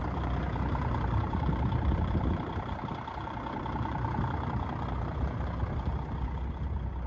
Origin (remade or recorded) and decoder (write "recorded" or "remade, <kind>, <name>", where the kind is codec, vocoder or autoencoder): remade, vocoder, BigVGAN v2